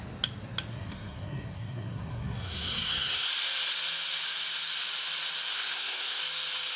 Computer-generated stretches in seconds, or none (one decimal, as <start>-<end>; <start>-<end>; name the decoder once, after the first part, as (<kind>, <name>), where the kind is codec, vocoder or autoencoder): 0.7-3.3 (codec, SNAC); 5.5-6.2